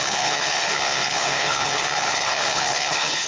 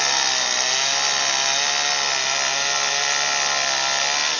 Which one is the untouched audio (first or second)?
second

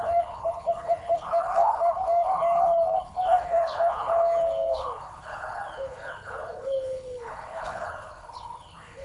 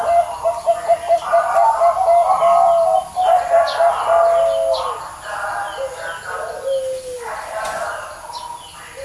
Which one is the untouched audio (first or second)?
second